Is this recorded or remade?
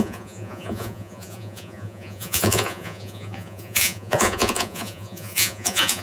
remade